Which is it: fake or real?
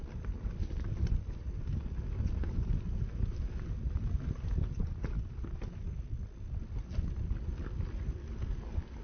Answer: real